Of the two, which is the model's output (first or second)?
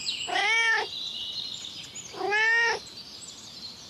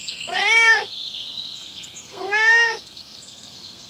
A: second